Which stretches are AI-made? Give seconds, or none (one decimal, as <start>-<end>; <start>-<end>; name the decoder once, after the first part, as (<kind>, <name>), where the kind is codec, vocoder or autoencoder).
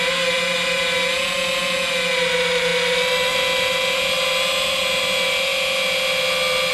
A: none